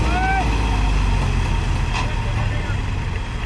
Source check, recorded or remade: recorded